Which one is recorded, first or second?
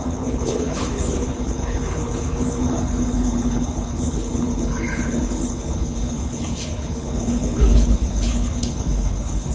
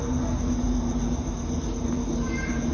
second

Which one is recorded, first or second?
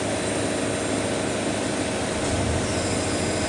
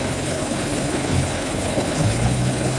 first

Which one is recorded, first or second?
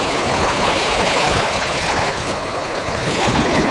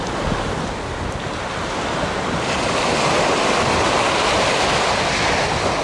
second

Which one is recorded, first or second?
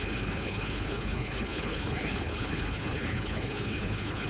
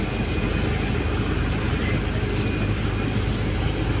second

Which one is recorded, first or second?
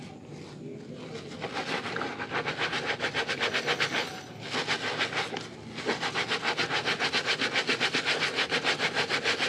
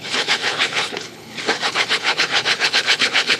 first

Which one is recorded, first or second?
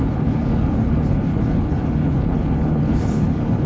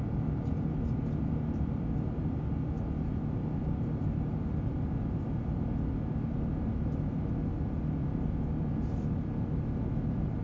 second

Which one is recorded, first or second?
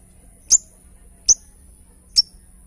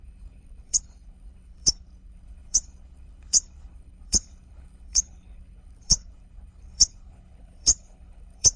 first